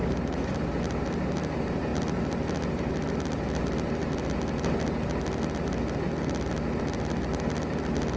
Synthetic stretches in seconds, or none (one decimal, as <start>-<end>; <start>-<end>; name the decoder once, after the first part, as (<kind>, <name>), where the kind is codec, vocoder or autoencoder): 0.0-0.6 (vocoder, BigVGAN v2)